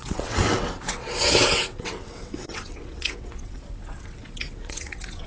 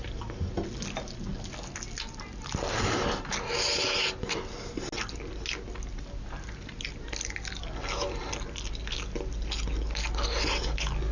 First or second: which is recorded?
second